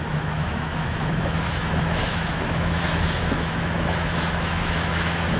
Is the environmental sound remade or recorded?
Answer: remade